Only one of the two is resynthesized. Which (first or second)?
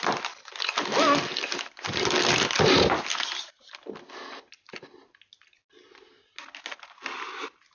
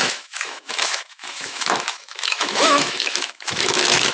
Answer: second